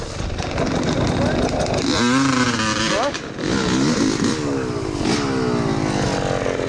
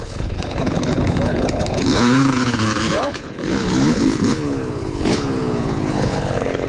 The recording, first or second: first